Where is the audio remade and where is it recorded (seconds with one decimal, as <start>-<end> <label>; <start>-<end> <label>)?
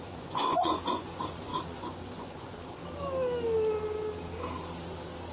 0.0-2.8 remade; 2.8-5.3 recorded